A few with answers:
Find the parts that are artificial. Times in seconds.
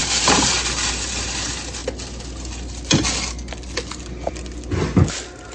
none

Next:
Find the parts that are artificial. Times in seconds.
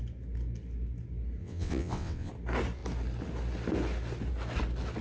1.4-2.3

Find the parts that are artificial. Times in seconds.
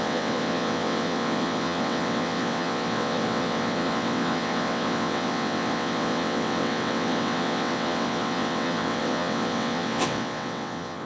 0.0-11.1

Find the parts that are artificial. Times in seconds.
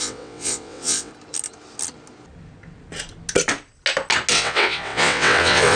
0.0-1.1; 4.3-5.8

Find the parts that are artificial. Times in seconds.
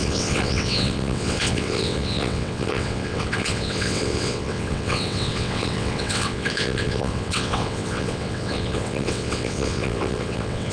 0.0-10.7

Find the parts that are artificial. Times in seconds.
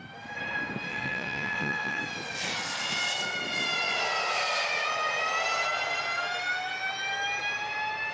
0.9-2.0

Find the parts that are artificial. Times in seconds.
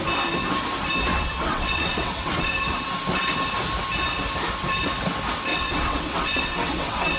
1.1-2.5; 5.5-7.2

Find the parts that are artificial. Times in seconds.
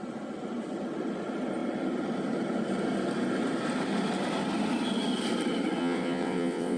5.8-6.8